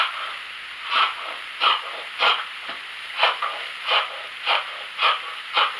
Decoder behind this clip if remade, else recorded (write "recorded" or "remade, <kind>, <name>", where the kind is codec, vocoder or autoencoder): remade, vocoder, BigVGAN v2